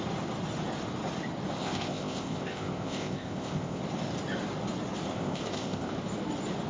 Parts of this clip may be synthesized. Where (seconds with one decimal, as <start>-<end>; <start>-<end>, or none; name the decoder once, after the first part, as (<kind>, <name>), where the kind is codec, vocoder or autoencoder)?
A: 1.6-3.8 (codec, ZipCodec); 5.1-5.9